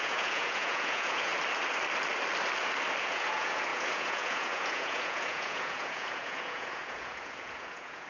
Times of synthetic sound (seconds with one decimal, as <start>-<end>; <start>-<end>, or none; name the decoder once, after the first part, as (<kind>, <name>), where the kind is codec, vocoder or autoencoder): 0.0-1.3 (vocoder, Vocos); 3.0-8.1